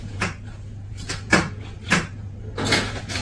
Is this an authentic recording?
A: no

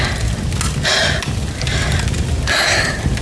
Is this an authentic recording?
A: yes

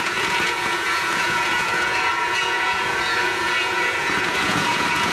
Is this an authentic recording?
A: no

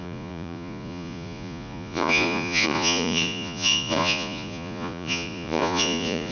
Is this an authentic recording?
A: no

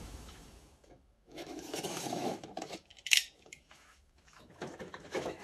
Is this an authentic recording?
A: no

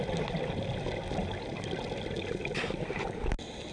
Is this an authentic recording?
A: yes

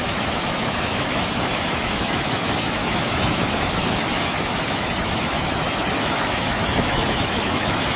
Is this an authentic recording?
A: no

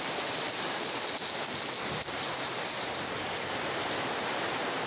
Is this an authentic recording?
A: no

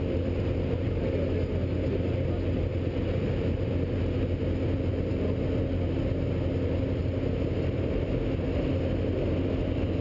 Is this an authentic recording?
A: yes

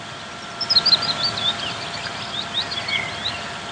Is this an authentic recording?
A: yes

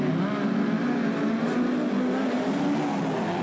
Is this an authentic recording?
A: yes